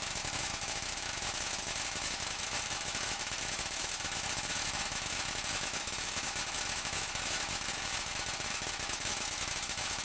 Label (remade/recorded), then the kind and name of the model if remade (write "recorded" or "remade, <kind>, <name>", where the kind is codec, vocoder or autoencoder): remade, autoencoder, DAC-VAE